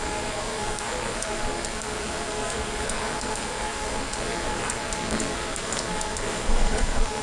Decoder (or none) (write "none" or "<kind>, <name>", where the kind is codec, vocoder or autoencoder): codec, SNAC